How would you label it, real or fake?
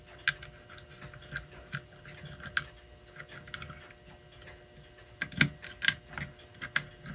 real